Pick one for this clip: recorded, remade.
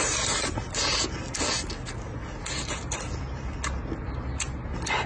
recorded